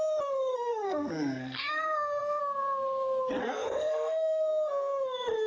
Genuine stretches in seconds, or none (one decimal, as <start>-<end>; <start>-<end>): 0.0-0.5; 2.4-3.4; 4.7-5.5